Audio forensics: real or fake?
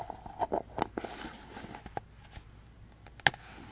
real